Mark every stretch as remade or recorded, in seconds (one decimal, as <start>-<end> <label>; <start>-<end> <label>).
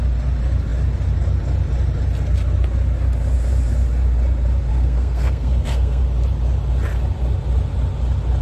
0.0-4.7 recorded; 4.7-6.0 remade; 6.0-8.4 recorded